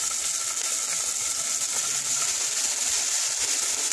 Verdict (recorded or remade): recorded